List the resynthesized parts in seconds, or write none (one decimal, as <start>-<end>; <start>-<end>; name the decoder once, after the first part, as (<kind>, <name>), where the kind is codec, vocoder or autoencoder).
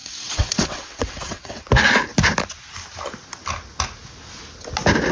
0.0-1.6 (vocoder, WaveNeXt)